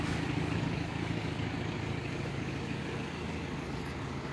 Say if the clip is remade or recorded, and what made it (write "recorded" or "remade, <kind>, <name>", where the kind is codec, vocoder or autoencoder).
remade, codec, DAC